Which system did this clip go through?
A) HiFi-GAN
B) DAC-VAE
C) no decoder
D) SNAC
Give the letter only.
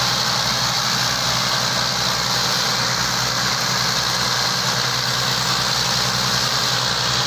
C